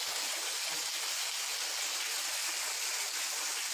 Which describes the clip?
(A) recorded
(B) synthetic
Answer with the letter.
A